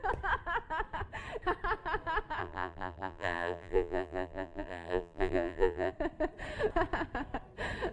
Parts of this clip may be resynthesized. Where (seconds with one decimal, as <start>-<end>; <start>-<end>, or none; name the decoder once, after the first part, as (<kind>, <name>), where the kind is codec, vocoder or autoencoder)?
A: 2.4-5.9 (vocoder, BigVGAN v2)